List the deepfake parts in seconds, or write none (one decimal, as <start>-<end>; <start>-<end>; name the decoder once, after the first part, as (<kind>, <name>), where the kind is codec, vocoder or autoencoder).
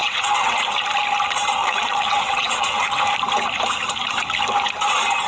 0.0-0.6 (vocoder, WaveNeXt); 1.6-3.0